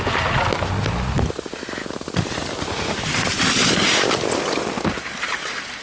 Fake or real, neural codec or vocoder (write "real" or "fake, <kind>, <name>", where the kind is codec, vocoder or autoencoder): real